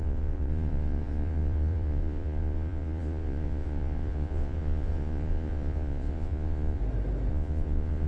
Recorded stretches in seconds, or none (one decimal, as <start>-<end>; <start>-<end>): 6.8-7.3